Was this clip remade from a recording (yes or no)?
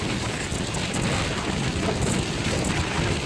no